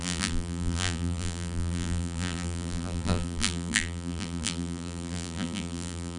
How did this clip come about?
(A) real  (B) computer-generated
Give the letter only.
B